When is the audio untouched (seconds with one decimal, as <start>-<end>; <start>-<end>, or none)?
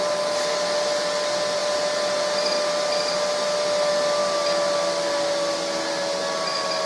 0.0-6.8